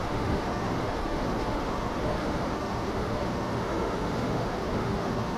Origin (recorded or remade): remade